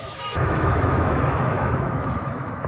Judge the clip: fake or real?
fake